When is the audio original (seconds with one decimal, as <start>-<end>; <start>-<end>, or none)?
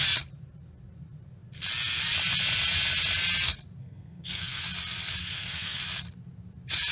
0.0-3.8; 4.6-5.2; 5.8-6.9